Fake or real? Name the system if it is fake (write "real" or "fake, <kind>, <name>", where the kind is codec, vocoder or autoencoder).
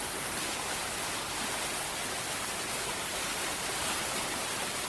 fake, vocoder, BigVGAN v2